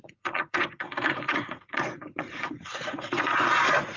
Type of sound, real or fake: fake